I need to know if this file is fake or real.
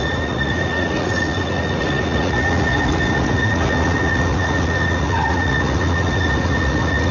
fake